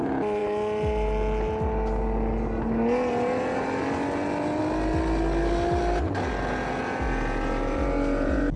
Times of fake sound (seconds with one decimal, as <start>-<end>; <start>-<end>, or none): none